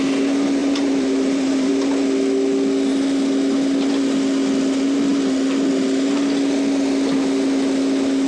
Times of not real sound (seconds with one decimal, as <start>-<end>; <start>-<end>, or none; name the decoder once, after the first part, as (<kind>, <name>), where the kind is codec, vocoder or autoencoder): 0.6-1.7 (vocoder, BigVGAN v2)